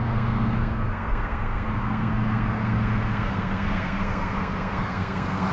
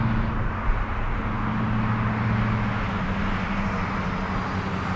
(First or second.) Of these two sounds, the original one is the second